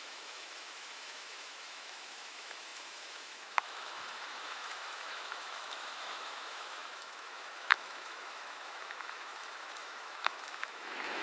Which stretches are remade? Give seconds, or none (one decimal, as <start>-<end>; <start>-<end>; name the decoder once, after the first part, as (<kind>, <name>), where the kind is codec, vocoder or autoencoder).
0.0-11.2 (autoencoder, DAC-VAE)